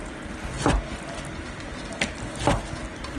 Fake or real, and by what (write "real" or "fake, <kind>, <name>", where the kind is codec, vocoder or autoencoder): real